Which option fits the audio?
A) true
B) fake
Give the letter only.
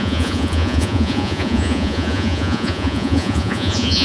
B